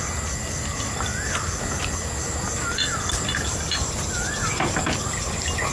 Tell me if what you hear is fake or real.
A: real